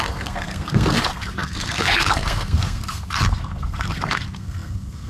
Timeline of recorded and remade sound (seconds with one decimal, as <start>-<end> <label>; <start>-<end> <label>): 0.0-5.1 remade